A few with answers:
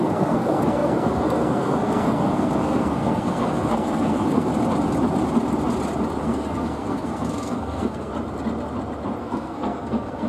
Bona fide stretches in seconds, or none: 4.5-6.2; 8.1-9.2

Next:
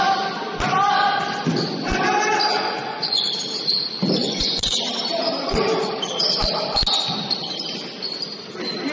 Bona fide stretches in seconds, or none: 0.0-2.5; 3.3-4.2; 4.8-8.9

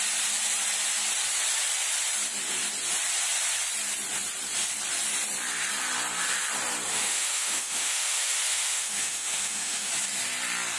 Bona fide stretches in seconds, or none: 0.0-6.9; 9.9-10.8

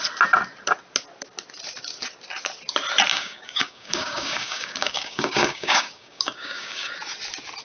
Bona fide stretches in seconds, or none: 0.0-3.1; 6.9-7.6